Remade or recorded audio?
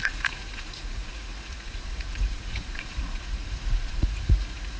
remade